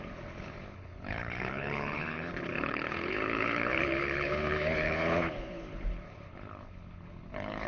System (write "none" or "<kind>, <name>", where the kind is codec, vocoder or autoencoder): codec, HILCodec